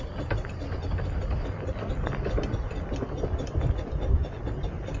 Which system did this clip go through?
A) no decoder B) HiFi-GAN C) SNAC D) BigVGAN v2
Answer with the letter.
A